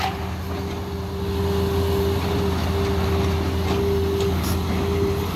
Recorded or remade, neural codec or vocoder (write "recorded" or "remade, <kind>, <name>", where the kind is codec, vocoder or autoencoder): recorded